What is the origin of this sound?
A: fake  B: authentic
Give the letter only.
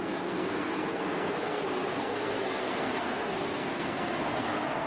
A